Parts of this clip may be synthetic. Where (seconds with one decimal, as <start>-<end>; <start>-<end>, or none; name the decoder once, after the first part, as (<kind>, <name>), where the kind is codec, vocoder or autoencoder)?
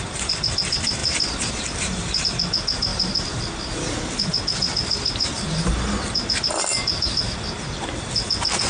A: 1.0-2.2 (vocoder, BigVGAN v2)